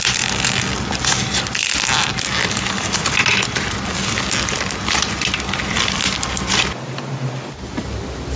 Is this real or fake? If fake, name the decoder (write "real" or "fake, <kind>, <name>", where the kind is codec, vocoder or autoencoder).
real